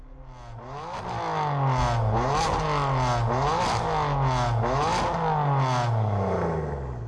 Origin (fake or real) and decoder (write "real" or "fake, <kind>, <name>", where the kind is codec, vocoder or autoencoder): real